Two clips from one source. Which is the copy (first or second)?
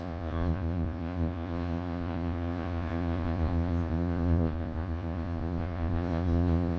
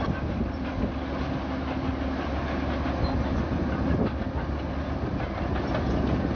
first